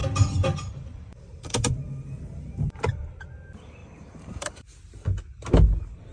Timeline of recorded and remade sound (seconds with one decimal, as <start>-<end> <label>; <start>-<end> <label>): 0.0-3.1 remade; 3.1-3.8 recorded; 3.8-4.6 remade; 4.6-6.1 recorded